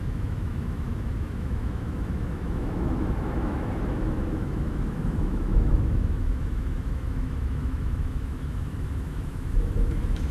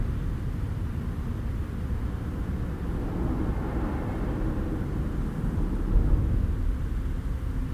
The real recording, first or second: second